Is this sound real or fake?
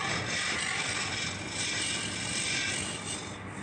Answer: real